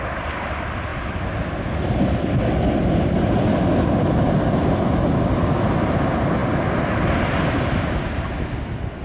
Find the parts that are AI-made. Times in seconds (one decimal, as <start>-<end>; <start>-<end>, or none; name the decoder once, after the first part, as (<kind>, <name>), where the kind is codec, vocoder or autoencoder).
none